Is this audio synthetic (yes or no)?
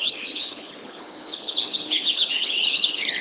yes